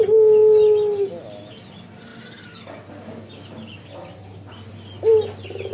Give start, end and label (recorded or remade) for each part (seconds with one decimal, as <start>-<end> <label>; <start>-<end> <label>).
0.0-5.7 recorded